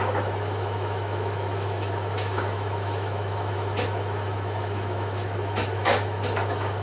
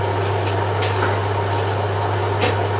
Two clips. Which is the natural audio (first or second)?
second